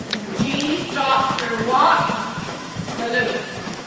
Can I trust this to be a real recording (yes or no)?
no